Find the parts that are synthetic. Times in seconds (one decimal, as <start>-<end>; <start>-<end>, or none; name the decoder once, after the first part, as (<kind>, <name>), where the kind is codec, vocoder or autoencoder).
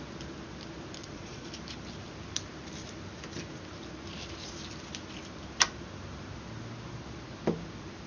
1.0-1.5 (vocoder, Vocos)